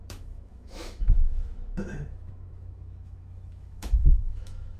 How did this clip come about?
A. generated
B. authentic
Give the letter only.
A